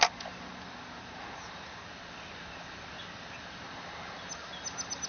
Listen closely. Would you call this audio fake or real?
real